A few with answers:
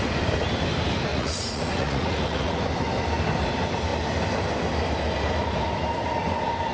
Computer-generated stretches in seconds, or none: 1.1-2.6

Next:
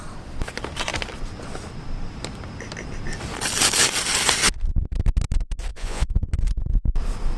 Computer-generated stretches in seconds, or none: 5.7-6.3

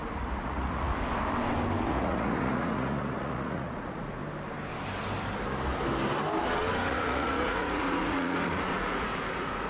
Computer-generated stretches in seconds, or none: 0.0-0.9; 1.9-4.2; 6.9-9.7

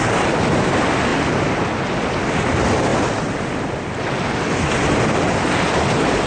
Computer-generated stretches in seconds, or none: none

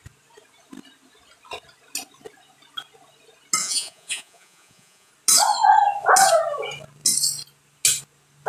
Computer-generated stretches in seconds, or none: 3.6-5.1

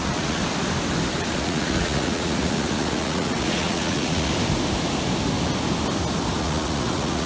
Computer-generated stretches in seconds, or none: 0.0-0.4; 1.2-4.3; 6.4-7.3

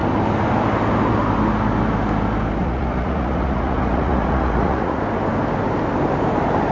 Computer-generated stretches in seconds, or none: 2.6-5.0